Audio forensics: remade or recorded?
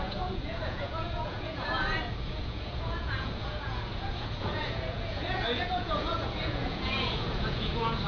remade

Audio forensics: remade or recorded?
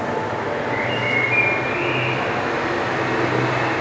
recorded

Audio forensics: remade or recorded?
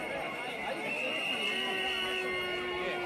recorded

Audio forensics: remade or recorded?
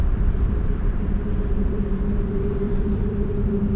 remade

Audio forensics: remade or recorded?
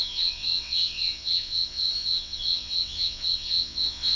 remade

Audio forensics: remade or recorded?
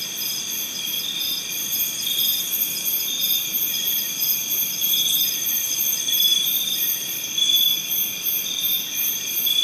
remade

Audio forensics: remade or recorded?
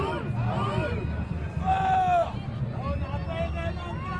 recorded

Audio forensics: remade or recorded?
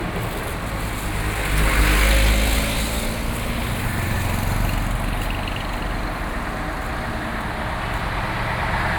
recorded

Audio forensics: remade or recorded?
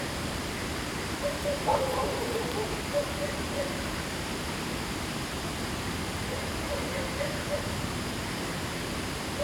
remade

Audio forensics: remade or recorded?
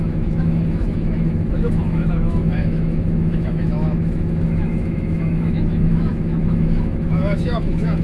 remade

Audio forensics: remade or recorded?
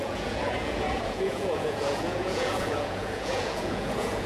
remade